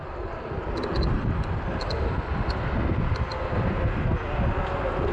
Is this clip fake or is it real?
real